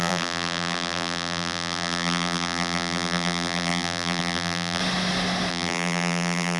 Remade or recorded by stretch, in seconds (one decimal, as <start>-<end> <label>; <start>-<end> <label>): 0.0-4.8 remade; 4.8-5.5 recorded; 5.5-6.6 remade